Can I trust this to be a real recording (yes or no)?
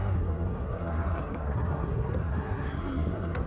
no